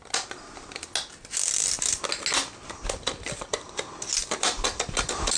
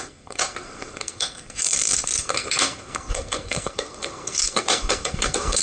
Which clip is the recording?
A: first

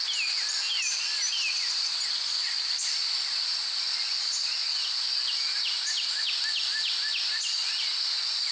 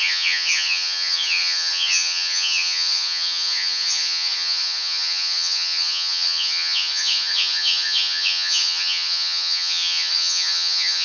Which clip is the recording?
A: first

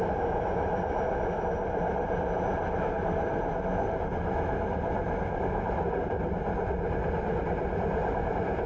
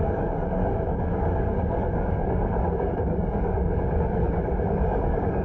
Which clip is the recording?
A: first